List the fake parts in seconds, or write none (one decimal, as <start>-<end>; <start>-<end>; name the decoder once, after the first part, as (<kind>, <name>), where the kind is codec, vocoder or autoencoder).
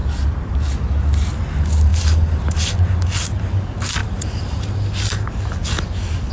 0.0-0.6 (vocoder, BigVGAN v2); 1.9-2.6; 4.0-5.5